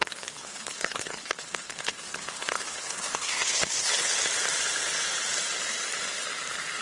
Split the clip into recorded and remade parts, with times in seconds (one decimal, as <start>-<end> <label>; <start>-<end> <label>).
0.0-4.1 remade; 4.1-6.8 recorded